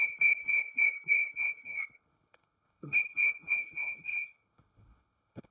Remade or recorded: remade